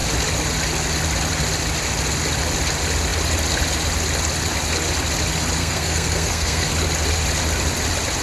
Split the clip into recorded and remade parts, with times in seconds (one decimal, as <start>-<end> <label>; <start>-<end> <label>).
0.0-5.6 recorded; 5.6-6.7 remade; 6.7-8.2 recorded